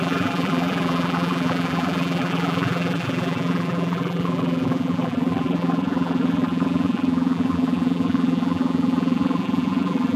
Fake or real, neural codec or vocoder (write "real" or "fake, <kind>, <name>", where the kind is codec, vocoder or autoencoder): fake, vocoder, BigVGAN v2